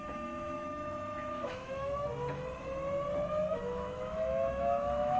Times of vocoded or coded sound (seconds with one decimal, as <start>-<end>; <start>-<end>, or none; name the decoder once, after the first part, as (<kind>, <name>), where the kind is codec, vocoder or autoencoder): 0.0-2.1 (autoencoder, DAC-VAE); 3.5-5.2